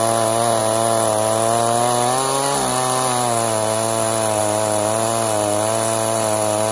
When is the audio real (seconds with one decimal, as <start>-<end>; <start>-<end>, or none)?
0.0-6.7